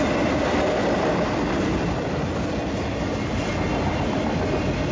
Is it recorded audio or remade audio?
recorded